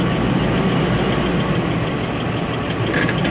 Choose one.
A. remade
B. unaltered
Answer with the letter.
B